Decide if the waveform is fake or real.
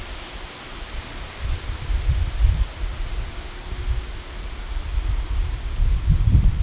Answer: real